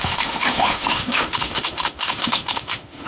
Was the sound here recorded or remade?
remade